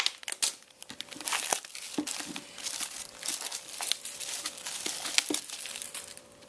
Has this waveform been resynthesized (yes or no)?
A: no